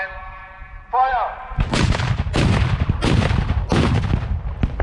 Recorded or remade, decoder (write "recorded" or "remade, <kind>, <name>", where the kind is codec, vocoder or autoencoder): recorded